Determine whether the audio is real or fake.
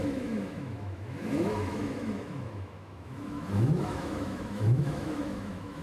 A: fake